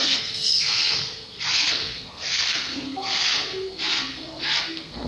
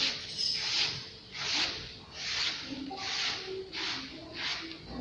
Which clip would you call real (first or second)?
second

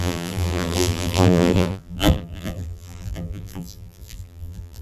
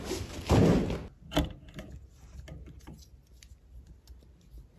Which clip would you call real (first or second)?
second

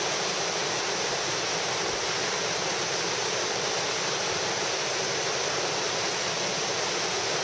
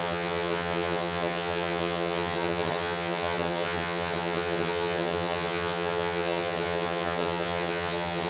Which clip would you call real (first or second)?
first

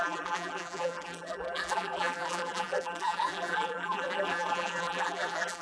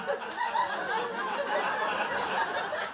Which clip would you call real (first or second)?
second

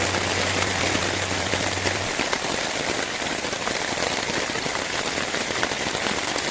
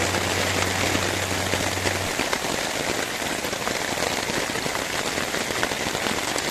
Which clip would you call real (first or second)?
second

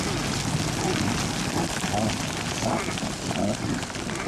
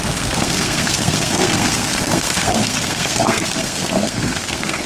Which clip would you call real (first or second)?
first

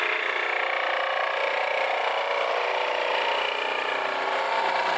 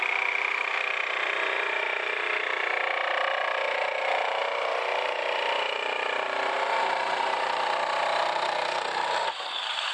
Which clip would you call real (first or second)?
first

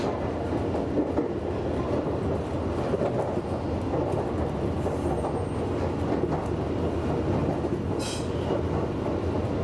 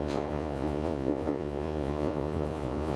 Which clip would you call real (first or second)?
first